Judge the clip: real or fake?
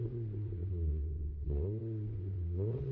fake